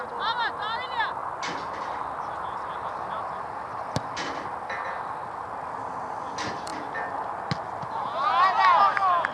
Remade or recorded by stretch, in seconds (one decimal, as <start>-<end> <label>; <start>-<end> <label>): 0.0-9.3 recorded